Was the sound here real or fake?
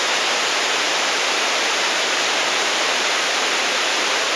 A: fake